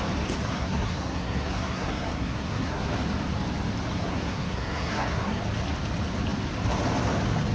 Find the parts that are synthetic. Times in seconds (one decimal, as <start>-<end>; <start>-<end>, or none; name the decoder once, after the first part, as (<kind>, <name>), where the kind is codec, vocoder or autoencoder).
0.5-2.9 (codec, SNAC); 3.9-5.4